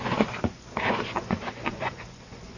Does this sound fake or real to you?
fake